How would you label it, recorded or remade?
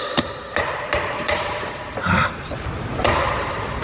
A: remade